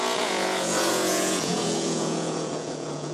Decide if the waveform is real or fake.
fake